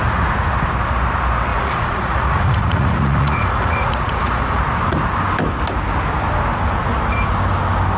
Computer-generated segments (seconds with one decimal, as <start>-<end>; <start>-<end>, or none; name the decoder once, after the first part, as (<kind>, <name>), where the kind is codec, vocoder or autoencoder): 1.5-4.6 (vocoder, Vocos)